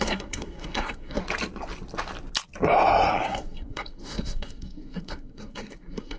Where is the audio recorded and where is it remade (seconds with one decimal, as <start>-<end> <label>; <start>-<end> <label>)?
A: 0.0-1.2 remade; 1.2-3.1 recorded; 3.1-6.2 remade